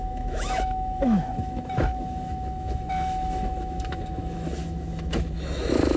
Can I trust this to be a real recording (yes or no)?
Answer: no